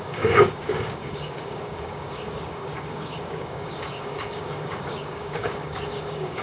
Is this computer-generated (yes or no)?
yes